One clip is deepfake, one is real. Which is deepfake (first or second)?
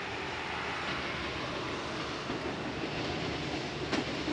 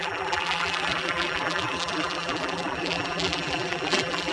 second